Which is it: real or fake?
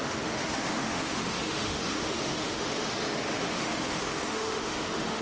fake